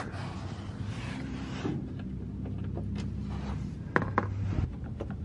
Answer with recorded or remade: recorded